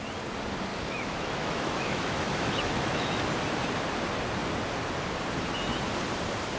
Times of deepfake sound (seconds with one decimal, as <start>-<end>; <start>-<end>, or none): 0.7-3.1